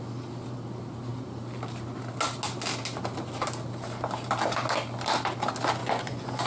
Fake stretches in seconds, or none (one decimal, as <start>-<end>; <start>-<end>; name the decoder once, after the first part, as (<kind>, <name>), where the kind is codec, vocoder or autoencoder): 5.8-6.5 (vocoder, Vocos)